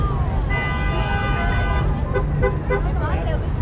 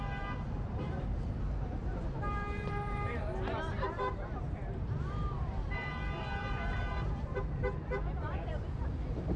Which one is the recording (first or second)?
first